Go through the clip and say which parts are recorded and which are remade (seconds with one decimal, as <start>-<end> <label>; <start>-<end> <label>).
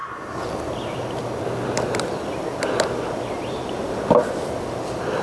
0.0-5.2 recorded